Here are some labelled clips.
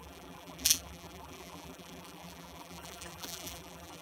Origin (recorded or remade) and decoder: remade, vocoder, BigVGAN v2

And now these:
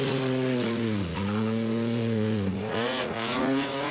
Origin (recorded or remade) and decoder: remade, vocoder, Vocos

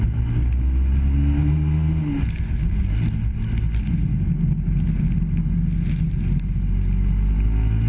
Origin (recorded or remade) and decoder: recorded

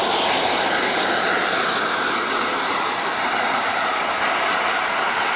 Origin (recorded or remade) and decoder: recorded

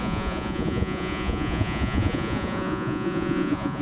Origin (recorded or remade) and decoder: remade, vocoder, Vocos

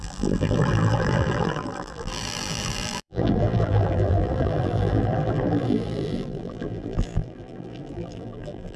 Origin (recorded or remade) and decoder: remade, vocoder, BigVGAN v2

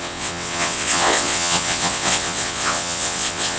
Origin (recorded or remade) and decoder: remade, vocoder, WaveNeXt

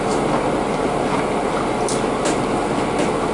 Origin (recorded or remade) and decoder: recorded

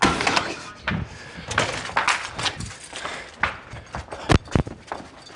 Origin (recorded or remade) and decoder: recorded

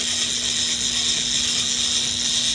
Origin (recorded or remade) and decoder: recorded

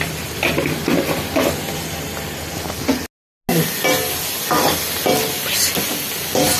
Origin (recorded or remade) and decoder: recorded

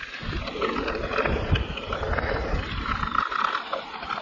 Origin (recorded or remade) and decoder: recorded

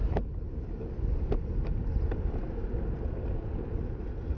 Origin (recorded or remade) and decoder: recorded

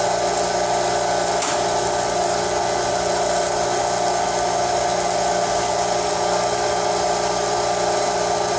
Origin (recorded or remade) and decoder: recorded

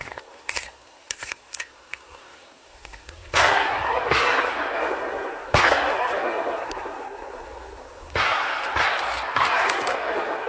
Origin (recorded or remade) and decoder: remade, codec, SNAC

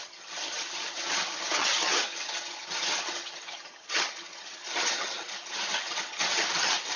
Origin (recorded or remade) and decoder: remade, vocoder, HiFi-GAN